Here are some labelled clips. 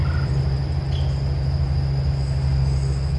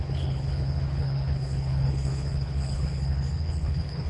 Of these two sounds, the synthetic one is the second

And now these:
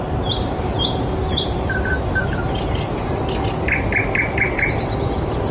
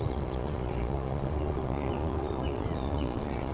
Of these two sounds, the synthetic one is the second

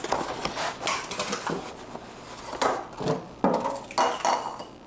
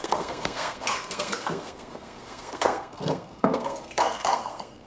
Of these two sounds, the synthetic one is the second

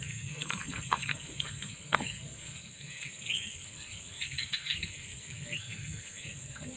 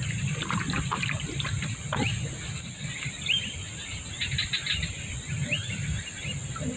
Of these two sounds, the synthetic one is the first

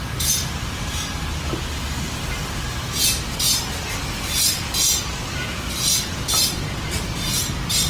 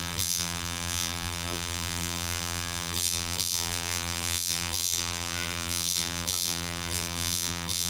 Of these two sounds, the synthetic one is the second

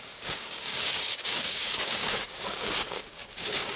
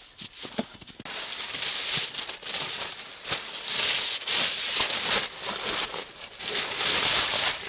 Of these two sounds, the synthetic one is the first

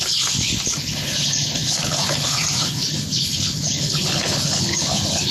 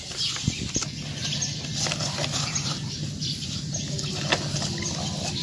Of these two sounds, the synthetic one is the first